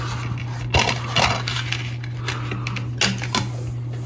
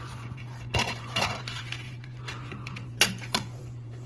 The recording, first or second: first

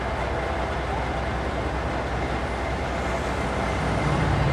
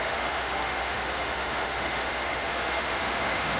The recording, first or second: first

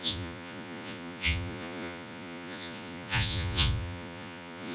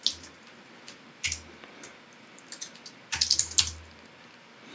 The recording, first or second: second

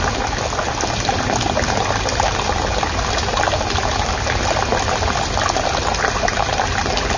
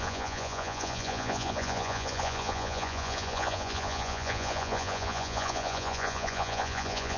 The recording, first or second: first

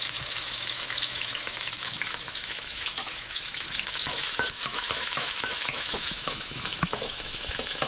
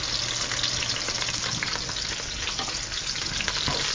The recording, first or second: second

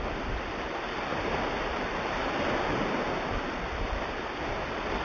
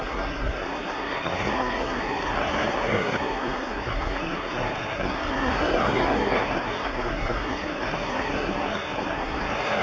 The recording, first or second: first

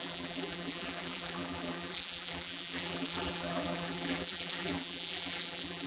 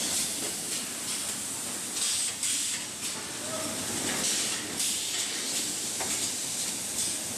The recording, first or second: second